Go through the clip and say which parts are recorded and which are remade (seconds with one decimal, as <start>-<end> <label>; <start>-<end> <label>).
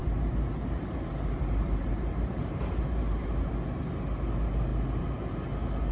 0.0-3.5 remade; 3.5-5.9 recorded